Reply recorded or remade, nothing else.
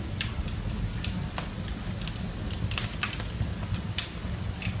recorded